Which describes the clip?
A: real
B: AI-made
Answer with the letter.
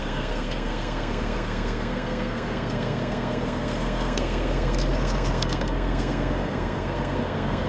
B